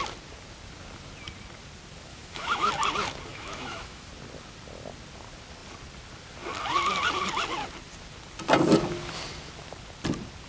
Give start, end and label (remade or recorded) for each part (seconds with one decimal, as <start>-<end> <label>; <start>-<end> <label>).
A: 0.0-2.1 recorded; 2.1-2.7 remade; 2.7-3.3 recorded; 3.3-4.1 remade; 4.1-10.5 recorded